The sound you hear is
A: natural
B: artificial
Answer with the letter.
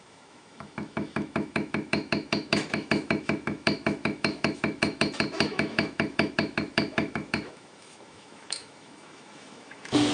B